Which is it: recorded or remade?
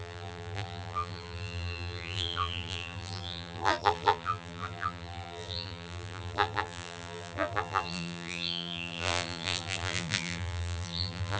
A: remade